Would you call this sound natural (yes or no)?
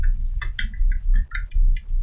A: yes